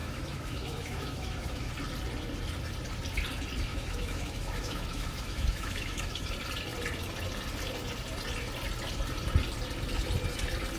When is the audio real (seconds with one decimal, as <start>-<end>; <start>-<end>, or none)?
1.7-3.7; 6.2-10.8